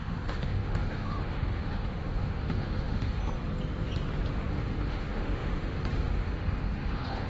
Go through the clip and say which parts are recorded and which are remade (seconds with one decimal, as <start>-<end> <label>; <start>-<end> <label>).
0.0-3.2 remade; 3.2-4.5 recorded; 4.5-7.3 remade